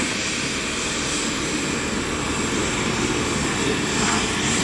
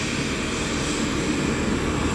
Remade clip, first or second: first